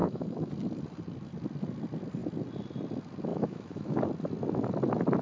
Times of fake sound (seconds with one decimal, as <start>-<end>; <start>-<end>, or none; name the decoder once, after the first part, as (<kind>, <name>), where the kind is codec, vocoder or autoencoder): 0.0-0.5 (autoencoder, DAC-VAE); 3.3-4.1